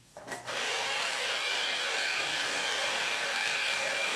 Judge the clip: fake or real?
fake